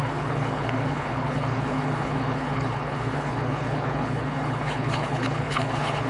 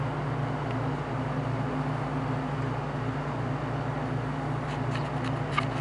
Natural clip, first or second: second